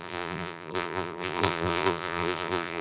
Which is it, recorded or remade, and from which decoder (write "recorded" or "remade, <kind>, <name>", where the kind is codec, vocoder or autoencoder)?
remade, vocoder, BigVGAN v2